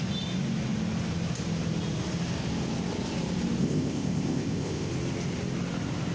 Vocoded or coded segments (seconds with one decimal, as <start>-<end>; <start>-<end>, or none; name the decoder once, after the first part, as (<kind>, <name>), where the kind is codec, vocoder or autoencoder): 3.6-4.9 (codec, ZipCodec)